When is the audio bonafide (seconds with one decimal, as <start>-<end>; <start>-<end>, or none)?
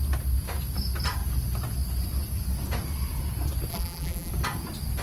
0.0-3.7; 4.3-5.0